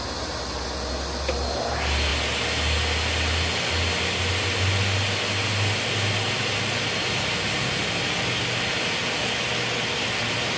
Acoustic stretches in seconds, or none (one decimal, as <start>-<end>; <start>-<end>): 0.0-10.6